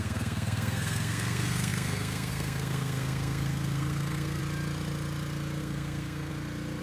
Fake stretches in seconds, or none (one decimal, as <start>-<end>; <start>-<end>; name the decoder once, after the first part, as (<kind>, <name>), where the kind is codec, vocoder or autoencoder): 0.0-4.4 (codec, SNAC); 5.6-6.3